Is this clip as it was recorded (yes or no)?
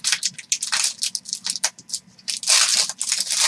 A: yes